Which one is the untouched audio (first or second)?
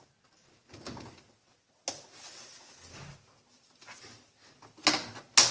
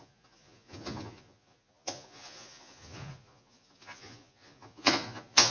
first